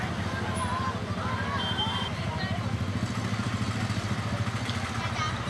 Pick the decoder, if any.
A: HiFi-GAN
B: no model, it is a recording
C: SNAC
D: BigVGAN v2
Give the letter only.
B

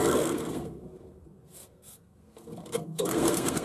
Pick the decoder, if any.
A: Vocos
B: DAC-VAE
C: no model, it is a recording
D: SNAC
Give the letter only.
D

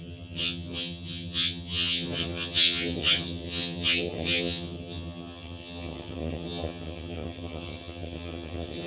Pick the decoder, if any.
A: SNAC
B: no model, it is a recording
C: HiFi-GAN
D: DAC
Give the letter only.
C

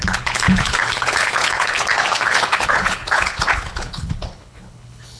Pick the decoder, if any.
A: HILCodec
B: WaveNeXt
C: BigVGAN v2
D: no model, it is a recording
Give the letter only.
A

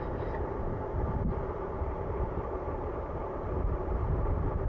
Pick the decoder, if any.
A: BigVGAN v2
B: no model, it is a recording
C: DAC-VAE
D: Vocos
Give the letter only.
A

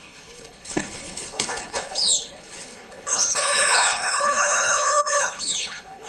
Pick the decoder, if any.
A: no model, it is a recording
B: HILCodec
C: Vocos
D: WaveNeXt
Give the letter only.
B